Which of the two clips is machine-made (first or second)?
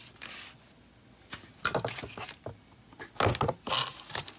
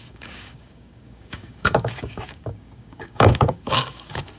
second